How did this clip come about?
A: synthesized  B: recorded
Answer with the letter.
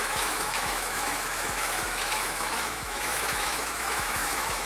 A